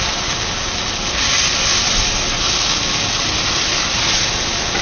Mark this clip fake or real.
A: real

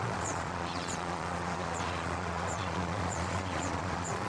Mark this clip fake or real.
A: fake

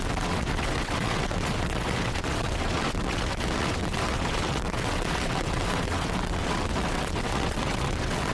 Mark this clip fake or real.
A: fake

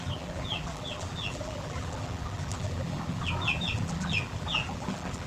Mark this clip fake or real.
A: fake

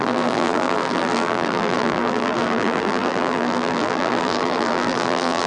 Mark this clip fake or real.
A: fake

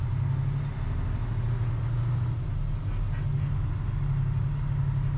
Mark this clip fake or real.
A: real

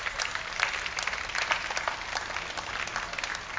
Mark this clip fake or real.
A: real